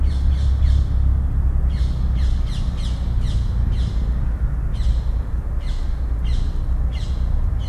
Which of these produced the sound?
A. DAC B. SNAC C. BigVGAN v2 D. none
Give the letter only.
D